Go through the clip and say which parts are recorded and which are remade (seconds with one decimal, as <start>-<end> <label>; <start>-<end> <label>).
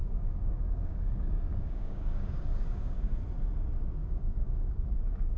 0.0-3.2 remade; 3.2-4.0 recorded; 4.0-4.8 remade; 4.8-5.4 recorded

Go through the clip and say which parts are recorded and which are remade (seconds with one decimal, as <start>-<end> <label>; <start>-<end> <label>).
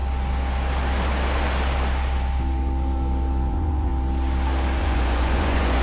0.0-3.5 recorded; 3.5-3.9 remade; 3.9-4.8 recorded; 4.8-5.8 remade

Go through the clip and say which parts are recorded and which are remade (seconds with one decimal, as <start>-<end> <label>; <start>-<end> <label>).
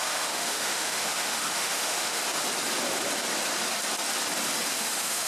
0.0-2.2 remade; 2.2-4.8 recorded; 4.8-5.3 remade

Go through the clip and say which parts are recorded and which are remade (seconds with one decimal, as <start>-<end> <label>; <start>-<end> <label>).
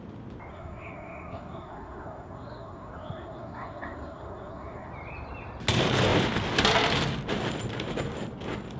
0.0-0.5 recorded; 0.5-4.9 remade; 4.9-8.8 recorded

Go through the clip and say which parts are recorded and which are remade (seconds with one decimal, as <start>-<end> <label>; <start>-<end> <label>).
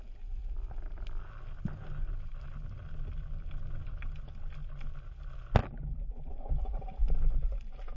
0.0-8.0 recorded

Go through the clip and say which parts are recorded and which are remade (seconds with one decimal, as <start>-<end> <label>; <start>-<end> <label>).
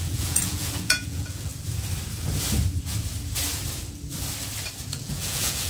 0.0-1.5 remade; 1.5-4.9 recorded; 4.9-5.7 remade